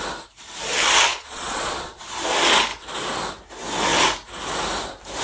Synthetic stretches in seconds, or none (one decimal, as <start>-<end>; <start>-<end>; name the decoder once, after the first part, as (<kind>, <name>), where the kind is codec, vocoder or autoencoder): 1.1-2.0 (vocoder, Vocos)